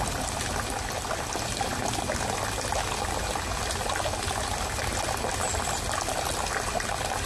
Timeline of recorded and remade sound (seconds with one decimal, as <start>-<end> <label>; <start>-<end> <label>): 0.0-7.3 recorded